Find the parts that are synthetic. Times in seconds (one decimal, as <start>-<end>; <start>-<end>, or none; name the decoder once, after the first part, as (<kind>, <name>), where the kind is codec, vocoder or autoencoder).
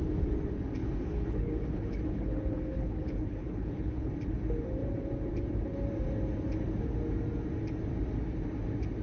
0.8-4.1 (codec, HILCodec)